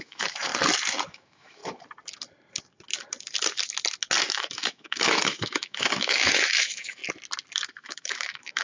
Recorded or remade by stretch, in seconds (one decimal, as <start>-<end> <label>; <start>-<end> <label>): 0.0-0.5 remade; 0.5-1.1 recorded; 1.1-1.6 remade; 1.6-4.3 recorded; 4.3-7.0 remade; 7.0-7.7 recorded; 7.7-8.6 remade